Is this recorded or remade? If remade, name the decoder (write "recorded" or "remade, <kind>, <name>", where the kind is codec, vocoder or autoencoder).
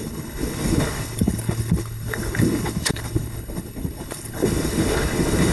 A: remade, codec, HILCodec